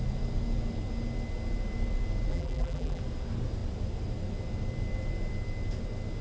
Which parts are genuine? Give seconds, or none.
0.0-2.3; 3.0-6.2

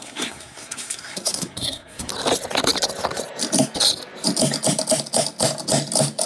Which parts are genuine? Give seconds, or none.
2.1-6.3

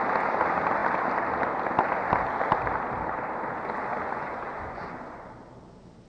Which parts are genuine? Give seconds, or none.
0.0-3.9; 5.3-6.1

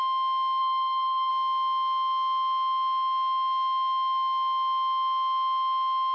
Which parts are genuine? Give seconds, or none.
0.0-0.6; 1.3-6.1

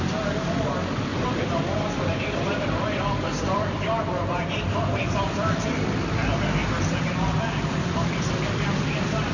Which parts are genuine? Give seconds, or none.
0.0-1.1; 6.1-9.3